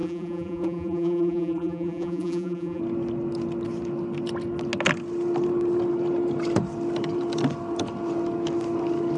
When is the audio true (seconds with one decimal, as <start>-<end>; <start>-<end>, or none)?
2.8-9.2